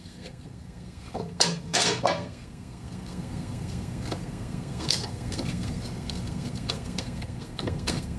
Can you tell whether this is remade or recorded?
remade